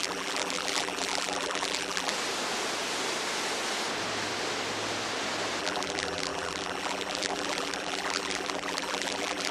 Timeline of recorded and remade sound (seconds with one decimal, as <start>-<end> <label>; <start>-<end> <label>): 0.0-2.1 remade; 2.1-5.6 recorded; 5.6-9.5 remade